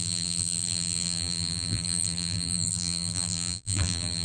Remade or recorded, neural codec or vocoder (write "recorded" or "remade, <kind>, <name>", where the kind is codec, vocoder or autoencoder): remade, vocoder, BigVGAN v2